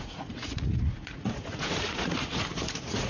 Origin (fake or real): fake